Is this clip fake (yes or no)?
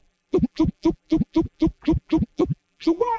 yes